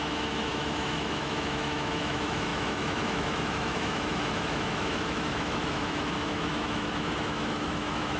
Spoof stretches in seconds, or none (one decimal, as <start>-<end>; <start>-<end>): 0.0-8.2